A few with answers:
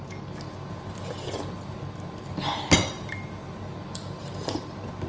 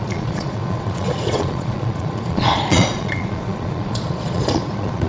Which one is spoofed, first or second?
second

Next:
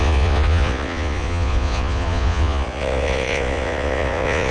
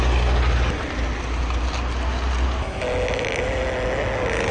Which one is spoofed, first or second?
first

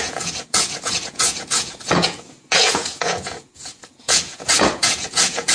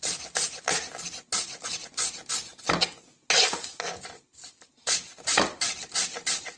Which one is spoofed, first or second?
first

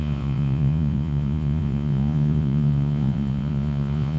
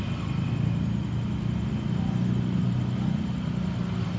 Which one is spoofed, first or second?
first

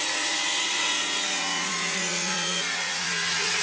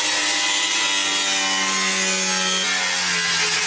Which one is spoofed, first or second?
first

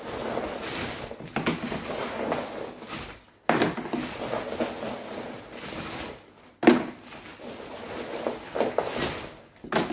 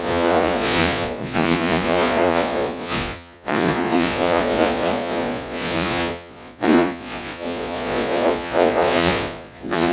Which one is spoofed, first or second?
second